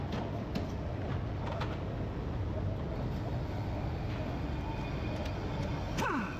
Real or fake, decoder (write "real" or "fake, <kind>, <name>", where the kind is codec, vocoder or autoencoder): real